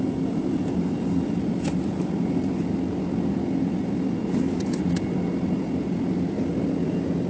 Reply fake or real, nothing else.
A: real